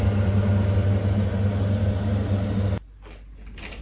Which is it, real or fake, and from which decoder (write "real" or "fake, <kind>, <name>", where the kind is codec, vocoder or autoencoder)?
real